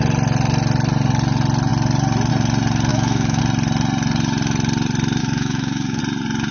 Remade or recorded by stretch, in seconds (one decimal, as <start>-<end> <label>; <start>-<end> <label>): 0.0-2.9 recorded; 2.9-3.4 remade; 3.4-5.2 recorded; 5.2-6.0 remade; 6.0-6.5 recorded